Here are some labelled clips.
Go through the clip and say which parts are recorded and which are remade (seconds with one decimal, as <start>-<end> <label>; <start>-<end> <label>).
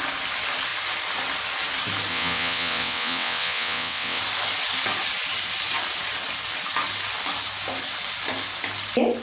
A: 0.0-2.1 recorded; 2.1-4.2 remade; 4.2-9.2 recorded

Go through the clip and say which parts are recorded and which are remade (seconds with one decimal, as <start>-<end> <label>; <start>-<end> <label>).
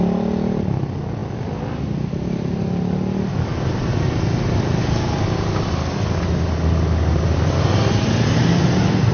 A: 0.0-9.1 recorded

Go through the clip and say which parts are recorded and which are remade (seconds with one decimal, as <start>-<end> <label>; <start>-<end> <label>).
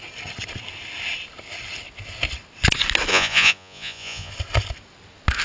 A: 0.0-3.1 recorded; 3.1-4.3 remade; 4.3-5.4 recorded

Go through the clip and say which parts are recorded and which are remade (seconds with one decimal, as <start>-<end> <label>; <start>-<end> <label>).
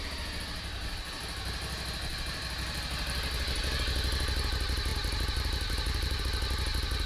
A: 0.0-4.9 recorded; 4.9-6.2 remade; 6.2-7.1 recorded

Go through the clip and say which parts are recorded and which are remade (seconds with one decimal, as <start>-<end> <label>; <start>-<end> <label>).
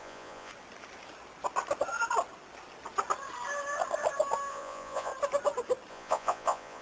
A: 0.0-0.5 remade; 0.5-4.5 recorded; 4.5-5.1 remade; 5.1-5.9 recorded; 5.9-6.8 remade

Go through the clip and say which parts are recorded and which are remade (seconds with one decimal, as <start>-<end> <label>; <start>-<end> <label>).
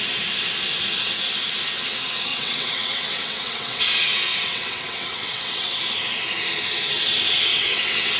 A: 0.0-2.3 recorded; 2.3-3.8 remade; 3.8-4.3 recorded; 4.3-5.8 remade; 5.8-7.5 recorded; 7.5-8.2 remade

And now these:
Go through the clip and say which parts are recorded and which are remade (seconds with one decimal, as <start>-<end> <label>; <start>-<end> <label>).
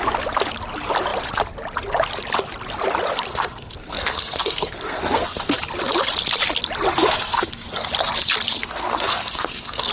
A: 0.0-3.3 recorded; 3.3-5.6 remade; 5.6-7.0 recorded; 7.0-7.9 remade; 7.9-8.5 recorded; 8.5-9.9 remade